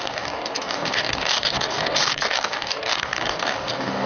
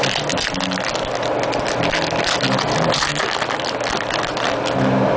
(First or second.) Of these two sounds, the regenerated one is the first